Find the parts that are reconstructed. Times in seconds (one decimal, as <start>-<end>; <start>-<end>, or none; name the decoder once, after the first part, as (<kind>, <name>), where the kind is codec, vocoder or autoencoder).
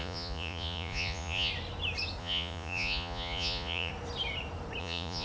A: 0.0-1.5 (vocoder, Vocos); 2.2-3.9; 4.8-5.2